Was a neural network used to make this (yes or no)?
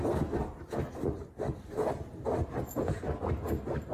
no